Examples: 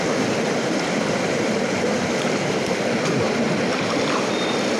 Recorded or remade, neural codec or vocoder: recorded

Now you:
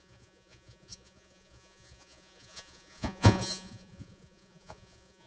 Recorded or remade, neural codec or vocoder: remade, vocoder, Vocos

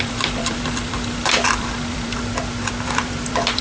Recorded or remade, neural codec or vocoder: remade, vocoder, BigVGAN v2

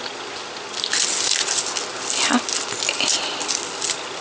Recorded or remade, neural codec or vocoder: recorded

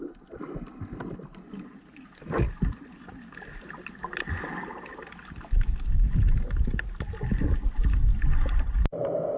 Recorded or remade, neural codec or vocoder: recorded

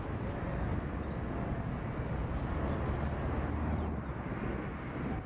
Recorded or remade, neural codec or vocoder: recorded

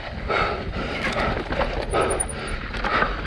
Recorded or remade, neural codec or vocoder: recorded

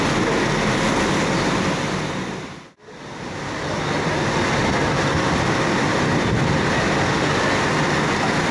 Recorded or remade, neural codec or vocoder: recorded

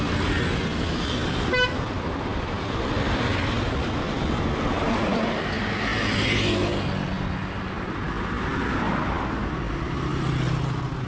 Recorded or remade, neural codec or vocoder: recorded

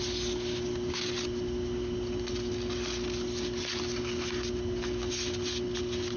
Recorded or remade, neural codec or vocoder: recorded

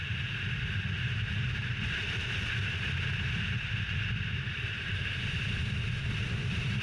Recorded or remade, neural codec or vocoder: remade, vocoder, BigVGAN v2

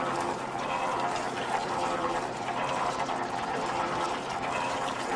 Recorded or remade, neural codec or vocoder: remade, vocoder, BigVGAN v2